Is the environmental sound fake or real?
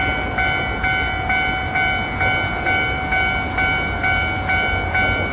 real